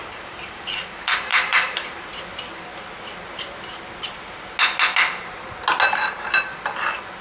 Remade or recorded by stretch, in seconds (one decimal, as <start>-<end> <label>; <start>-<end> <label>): 0.0-2.7 remade; 2.7-7.2 recorded